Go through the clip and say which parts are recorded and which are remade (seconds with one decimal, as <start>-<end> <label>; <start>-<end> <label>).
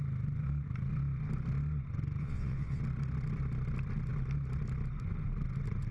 0.0-2.2 recorded; 2.2-2.8 remade; 2.8-5.9 recorded